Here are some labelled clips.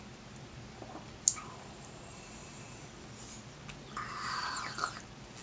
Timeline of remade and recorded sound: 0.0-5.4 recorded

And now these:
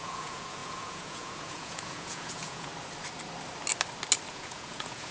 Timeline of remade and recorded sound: 0.0-2.7 remade; 2.7-4.3 recorded; 4.3-5.1 remade

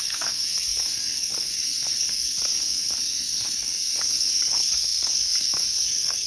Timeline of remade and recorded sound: 0.0-6.3 remade

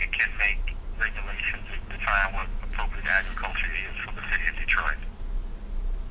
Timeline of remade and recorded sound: 0.0-6.1 recorded

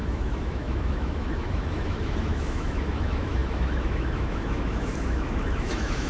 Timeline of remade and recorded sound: 0.0-6.1 remade

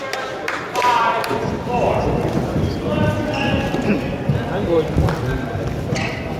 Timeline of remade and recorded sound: 0.0-1.4 remade; 1.4-6.4 recorded